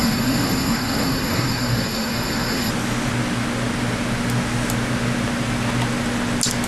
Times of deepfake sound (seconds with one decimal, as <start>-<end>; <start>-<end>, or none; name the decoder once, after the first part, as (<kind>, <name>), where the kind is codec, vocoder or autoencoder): 0.0-2.7 (codec, SNAC)